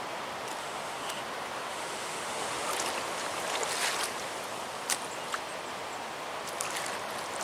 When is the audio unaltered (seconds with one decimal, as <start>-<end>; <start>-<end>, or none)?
0.0-0.6; 1.2-1.7; 2.7-7.4